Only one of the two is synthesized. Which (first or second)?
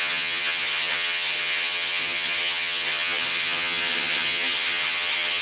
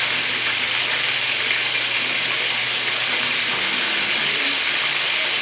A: first